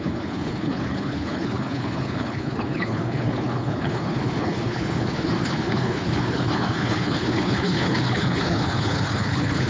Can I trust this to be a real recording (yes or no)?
no